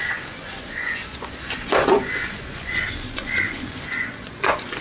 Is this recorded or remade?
remade